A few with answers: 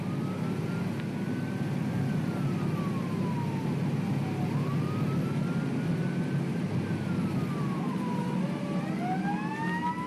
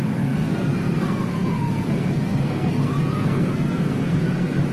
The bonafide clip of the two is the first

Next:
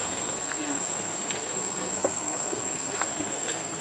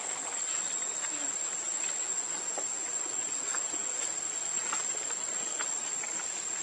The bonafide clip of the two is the second